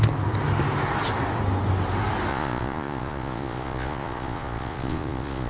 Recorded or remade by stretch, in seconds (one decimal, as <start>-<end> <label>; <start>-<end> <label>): 0.0-2.3 recorded; 2.3-5.5 remade